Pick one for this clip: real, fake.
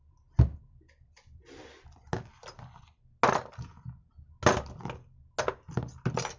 real